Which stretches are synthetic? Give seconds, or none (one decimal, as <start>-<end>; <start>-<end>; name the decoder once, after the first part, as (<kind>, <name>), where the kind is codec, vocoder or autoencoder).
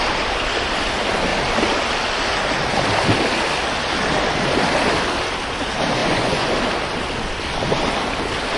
6.0-6.5 (vocoder, Vocos)